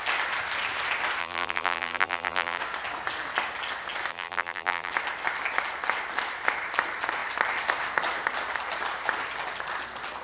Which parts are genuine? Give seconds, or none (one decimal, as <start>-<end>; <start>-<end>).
0.0-1.2; 2.6-4.1; 4.9-10.2